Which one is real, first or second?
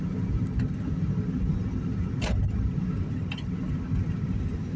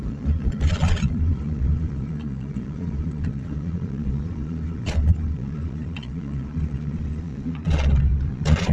first